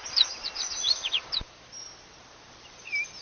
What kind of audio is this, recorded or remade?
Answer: recorded